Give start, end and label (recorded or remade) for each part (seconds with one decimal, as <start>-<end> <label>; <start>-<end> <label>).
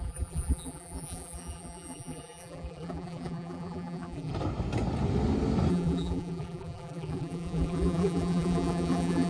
0.0-4.3 remade; 4.3-5.7 recorded; 5.7-9.3 remade